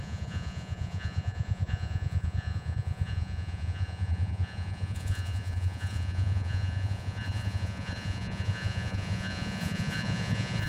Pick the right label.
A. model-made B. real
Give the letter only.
A